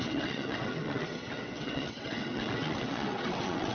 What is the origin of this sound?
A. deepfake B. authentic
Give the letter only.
A